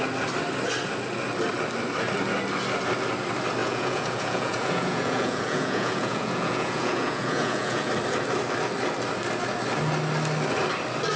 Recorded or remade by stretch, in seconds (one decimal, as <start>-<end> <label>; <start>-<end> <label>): 0.0-3.6 recorded; 3.6-7.9 remade; 7.9-11.2 recorded